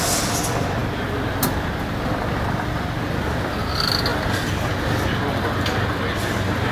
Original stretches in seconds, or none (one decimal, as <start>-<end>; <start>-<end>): 0.0-6.7

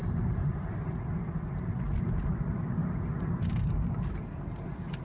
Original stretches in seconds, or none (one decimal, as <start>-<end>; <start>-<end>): 2.8-5.0

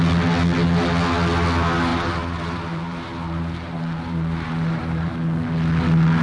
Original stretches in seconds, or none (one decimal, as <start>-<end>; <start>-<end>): 0.0-1.9; 5.1-6.2

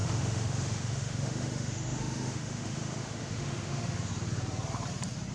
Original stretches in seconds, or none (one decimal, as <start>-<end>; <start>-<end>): 4.1-5.3

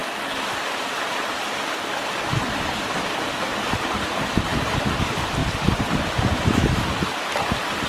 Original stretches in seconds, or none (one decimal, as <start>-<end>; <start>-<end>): 0.0-5.4; 6.1-7.9

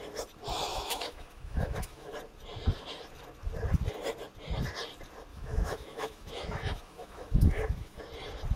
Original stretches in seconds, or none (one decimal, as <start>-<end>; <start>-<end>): 0.0-0.7; 2.1-5.3; 8.0-8.6

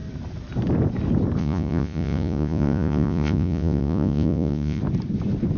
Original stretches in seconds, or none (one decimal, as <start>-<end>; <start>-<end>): 0.0-1.4; 4.8-5.6